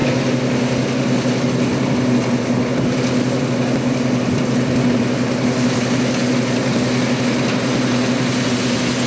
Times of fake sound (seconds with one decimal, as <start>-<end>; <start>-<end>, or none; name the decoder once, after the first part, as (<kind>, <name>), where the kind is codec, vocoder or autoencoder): none